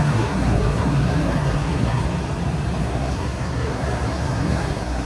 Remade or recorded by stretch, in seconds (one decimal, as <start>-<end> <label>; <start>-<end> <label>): 0.0-2.0 remade; 2.0-2.8 recorded; 2.8-5.0 remade